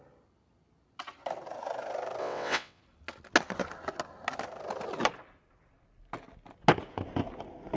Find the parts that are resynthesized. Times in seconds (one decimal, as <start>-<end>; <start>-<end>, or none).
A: 2.2-2.8